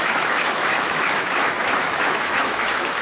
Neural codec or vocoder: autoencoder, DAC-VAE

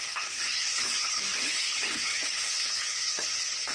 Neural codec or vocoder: codec, HILCodec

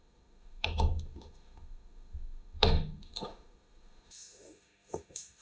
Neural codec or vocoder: autoencoder, DAC-VAE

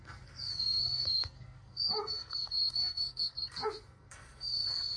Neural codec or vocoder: codec, SNAC